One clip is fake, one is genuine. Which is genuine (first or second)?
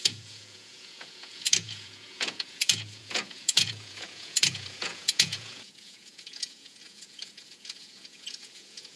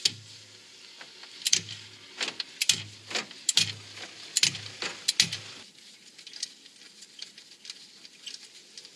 second